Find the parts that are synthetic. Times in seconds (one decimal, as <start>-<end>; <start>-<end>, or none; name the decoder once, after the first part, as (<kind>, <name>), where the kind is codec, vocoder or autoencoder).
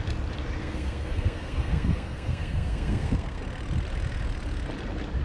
0.6-3.4 (codec, SNAC)